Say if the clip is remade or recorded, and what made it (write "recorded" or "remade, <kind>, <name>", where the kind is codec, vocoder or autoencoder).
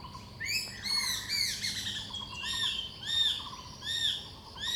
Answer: recorded